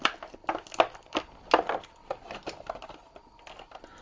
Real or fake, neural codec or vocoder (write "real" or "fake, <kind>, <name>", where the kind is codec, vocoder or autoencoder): real